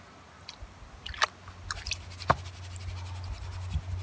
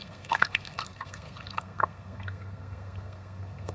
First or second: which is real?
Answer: first